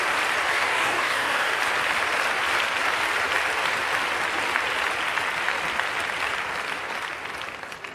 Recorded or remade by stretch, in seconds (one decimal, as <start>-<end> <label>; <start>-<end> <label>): 0.0-0.5 recorded; 0.5-1.6 remade; 1.6-7.9 recorded